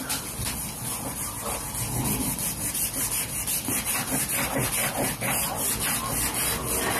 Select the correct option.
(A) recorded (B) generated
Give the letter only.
A